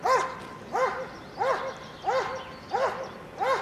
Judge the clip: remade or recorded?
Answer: recorded